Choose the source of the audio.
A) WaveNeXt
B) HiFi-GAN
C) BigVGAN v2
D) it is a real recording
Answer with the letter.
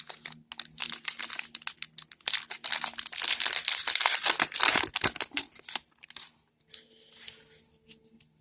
D